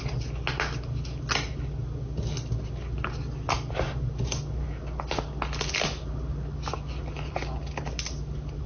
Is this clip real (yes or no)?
yes